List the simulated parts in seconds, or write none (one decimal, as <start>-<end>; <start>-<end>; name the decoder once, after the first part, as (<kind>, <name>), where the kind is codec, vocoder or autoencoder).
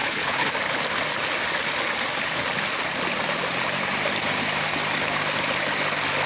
0.0-0.5 (codec, HILCodec)